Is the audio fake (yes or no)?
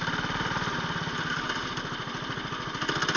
no